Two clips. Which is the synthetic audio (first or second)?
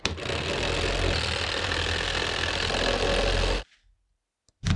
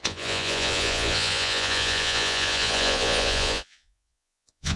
second